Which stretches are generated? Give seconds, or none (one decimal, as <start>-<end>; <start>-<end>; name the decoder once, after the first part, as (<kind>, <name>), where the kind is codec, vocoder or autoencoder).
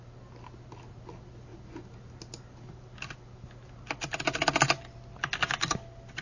none